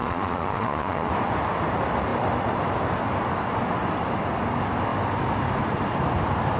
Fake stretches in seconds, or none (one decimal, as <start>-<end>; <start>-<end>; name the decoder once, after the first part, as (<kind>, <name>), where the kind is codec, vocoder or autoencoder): 0.0-1.1 (vocoder, Vocos)